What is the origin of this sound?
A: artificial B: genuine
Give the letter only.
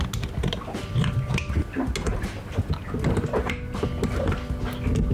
B